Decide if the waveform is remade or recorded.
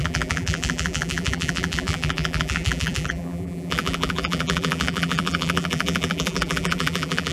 remade